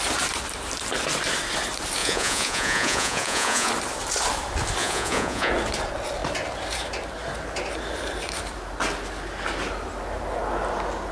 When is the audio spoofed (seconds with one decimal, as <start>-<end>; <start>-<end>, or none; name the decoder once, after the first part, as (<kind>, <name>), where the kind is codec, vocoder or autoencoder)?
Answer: 2.0-3.7 (vocoder, Vocos); 4.8-5.5